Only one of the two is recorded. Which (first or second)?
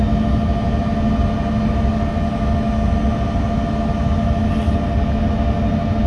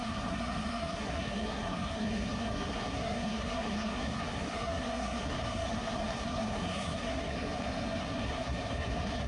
first